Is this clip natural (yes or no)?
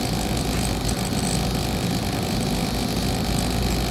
yes